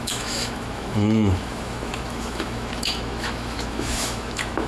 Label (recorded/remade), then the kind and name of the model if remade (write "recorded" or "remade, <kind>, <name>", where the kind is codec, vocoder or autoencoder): remade, autoencoder, DAC-VAE